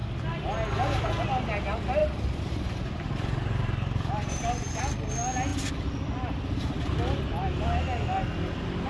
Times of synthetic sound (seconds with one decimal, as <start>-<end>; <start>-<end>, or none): 2.0-4.8